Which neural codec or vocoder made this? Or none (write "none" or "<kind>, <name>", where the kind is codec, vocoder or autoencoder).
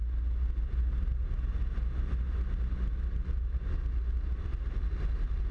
none